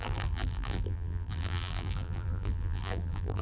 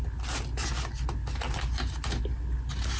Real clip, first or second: second